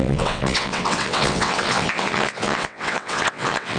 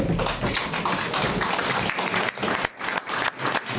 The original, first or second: second